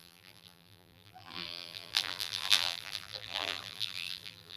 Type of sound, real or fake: fake